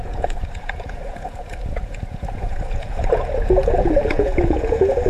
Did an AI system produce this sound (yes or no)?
yes